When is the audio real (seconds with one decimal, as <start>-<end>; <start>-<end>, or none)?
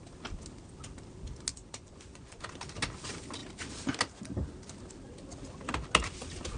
0.0-1.5; 2.4-6.6